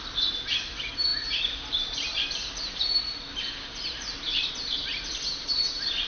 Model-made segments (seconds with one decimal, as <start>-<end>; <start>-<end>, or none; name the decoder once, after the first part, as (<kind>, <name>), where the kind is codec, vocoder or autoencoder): none